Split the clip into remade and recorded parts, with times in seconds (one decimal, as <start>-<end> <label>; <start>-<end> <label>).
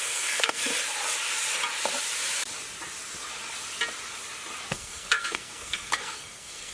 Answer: 0.0-0.7 remade; 0.7-4.7 recorded; 4.7-6.7 remade